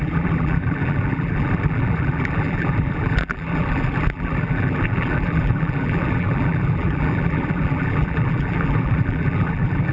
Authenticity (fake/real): fake